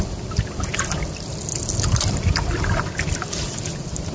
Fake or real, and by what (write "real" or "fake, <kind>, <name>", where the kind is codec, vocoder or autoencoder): real